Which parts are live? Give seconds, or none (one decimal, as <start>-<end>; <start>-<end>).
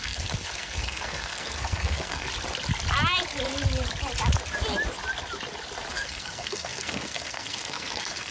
2.3-5.9